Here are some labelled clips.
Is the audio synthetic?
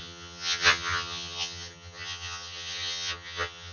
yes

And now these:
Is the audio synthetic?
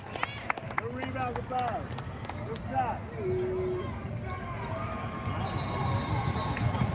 no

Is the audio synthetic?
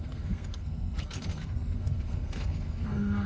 yes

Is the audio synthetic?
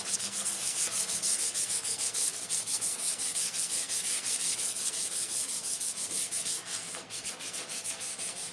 yes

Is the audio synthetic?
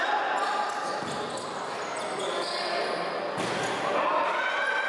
no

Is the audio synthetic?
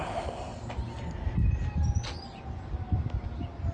no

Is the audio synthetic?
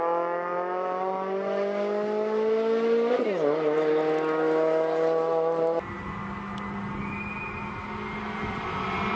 no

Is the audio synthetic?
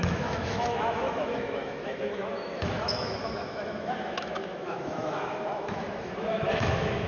yes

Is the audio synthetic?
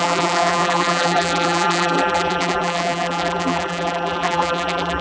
yes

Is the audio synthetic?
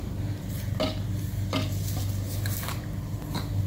no